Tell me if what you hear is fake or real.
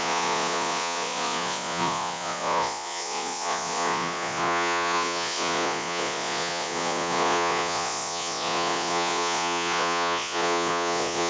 fake